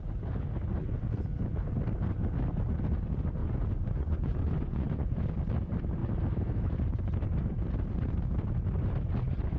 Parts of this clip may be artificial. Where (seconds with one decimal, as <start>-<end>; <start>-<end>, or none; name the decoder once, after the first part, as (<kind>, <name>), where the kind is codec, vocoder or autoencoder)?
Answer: 3.4-5.2 (vocoder, Vocos)